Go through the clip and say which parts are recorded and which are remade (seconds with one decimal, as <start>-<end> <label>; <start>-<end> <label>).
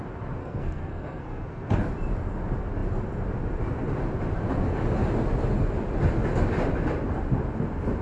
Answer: 0.0-0.4 recorded; 0.4-1.8 remade; 1.8-8.0 recorded